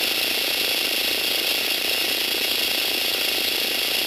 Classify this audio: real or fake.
real